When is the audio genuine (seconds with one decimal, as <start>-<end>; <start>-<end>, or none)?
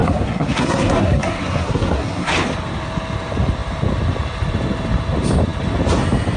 2.3-6.4